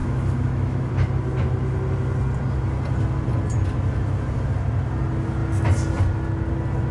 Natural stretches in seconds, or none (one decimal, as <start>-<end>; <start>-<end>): 0.9-6.9